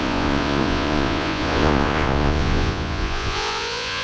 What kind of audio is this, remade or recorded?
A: remade